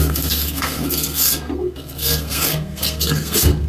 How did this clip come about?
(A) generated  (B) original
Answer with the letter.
A